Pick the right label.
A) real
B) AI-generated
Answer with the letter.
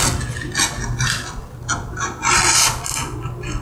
A